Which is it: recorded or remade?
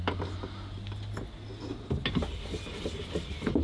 recorded